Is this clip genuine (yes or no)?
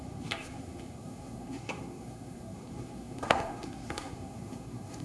no